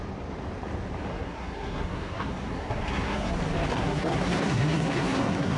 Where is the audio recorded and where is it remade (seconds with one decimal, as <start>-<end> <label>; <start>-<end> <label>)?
0.0-1.1 recorded; 1.1-3.3 remade; 3.3-3.7 recorded; 3.7-5.6 remade